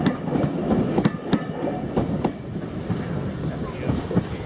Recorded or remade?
recorded